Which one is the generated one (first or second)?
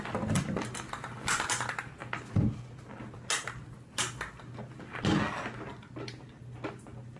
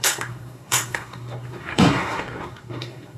second